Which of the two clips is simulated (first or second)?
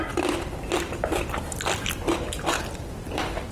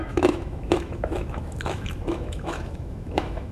second